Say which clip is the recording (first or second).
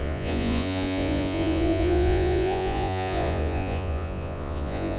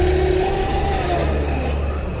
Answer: second